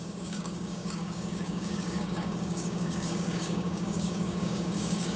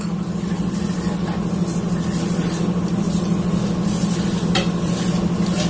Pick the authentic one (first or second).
second